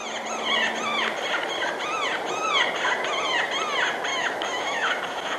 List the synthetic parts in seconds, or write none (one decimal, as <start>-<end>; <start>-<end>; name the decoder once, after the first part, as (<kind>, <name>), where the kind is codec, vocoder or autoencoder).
4.1-5.0 (autoencoder, DAC-VAE)